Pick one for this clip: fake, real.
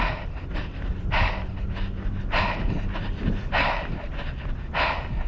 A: real